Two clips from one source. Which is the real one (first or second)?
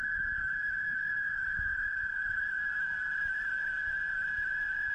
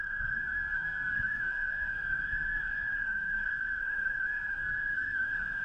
first